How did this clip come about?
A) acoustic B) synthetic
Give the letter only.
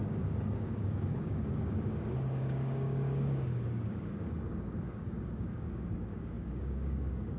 B